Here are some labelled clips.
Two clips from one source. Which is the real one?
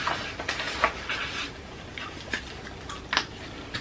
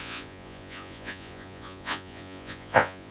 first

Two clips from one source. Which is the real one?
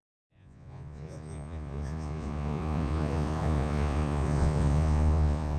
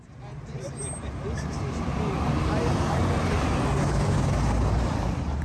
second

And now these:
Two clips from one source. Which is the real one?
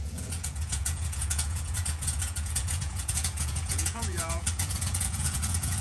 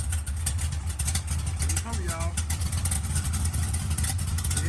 second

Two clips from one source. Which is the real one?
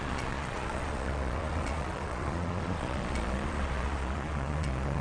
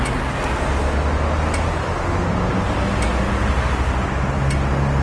second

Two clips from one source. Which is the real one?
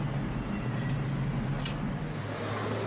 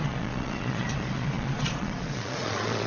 first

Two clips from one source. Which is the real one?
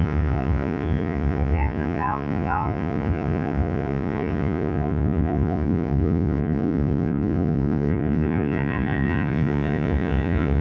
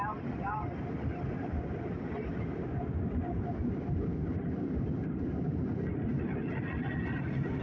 second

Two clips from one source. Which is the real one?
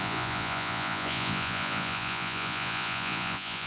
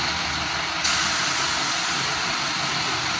second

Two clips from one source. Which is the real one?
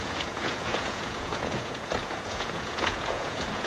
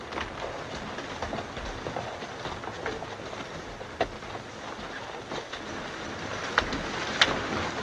second